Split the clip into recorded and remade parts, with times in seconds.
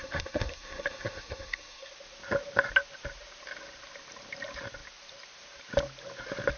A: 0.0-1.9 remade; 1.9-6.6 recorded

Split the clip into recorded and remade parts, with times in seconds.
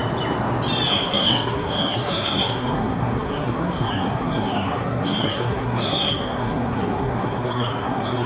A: 0.0-0.9 recorded; 0.9-8.3 remade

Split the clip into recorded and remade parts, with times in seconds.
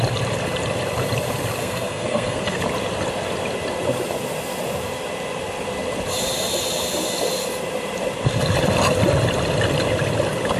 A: 0.0-1.6 recorded; 1.6-2.6 remade; 2.6-10.6 recorded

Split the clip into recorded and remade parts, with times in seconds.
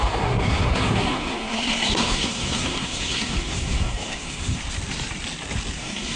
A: 0.0-4.6 remade; 4.6-5.8 recorded; 5.8-6.2 remade